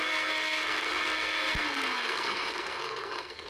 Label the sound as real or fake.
fake